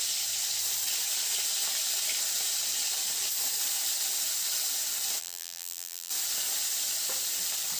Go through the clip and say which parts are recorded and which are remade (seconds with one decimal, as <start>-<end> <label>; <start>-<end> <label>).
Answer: 0.0-5.2 recorded; 5.2-6.1 remade; 6.1-7.8 recorded